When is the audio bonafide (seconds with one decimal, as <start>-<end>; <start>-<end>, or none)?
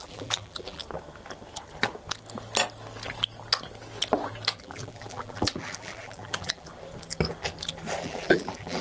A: 0.8-4.6; 6.7-8.0